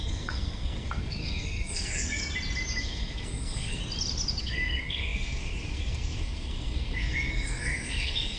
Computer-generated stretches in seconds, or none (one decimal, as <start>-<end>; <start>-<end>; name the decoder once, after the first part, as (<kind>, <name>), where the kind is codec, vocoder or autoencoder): 0.0-2.2 (codec, SNAC); 2.8-3.8; 4.4-8.4